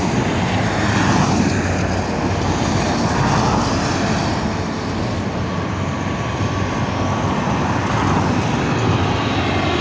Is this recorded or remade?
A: recorded